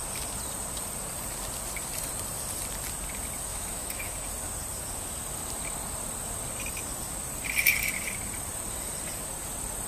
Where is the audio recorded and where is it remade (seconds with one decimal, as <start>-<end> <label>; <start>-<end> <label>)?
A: 0.0-3.5 recorded; 3.5-4.3 remade; 4.3-9.9 recorded